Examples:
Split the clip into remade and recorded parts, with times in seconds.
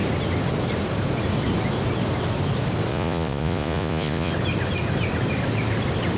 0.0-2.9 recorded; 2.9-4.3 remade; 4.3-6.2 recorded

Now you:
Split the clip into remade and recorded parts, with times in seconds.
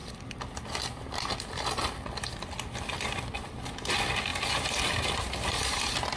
0.0-6.2 recorded